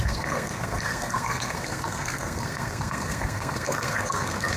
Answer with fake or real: fake